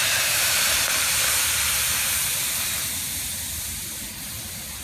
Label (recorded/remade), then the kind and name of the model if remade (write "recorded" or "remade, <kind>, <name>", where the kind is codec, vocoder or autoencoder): remade, vocoder, BigVGAN v2